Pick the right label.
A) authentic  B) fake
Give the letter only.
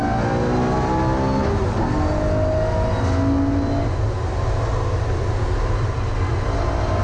A